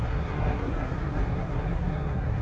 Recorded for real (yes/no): no